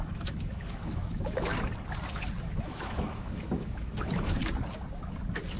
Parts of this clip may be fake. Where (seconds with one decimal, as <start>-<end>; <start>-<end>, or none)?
0.0-1.5; 2.6-4.4